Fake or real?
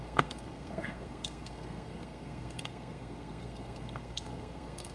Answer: fake